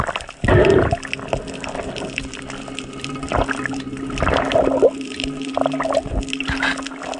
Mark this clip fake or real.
real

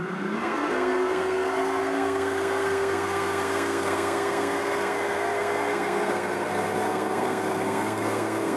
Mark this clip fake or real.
fake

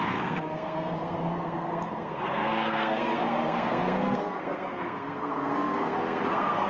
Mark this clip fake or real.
fake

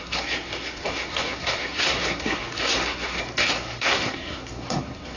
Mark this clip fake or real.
fake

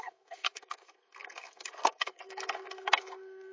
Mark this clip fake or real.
fake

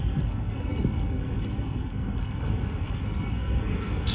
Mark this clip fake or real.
fake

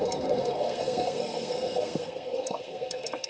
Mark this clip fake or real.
fake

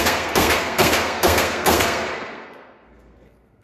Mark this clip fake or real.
fake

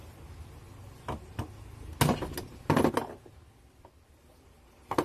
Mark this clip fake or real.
real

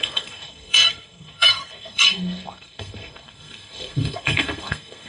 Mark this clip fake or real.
fake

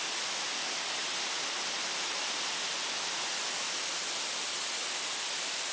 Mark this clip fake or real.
real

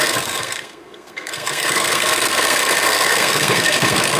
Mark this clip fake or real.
fake